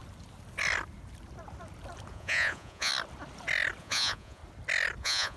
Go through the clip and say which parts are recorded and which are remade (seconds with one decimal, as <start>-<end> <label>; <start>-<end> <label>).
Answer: 0.0-2.1 recorded; 2.1-2.9 remade; 2.9-3.8 recorded; 3.8-4.4 remade; 4.4-5.0 recorded; 5.0-5.4 remade